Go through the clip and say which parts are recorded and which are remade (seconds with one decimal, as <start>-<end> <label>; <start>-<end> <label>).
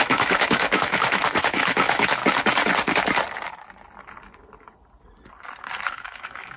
0.0-2.2 remade; 2.2-5.9 recorded; 5.9-6.6 remade